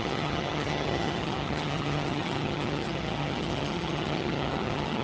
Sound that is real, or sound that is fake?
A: fake